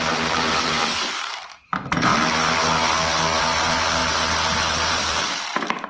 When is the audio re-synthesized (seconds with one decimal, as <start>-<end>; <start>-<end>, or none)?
0.0-2.1; 3.4-5.9